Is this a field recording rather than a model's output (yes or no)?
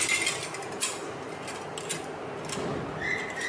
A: yes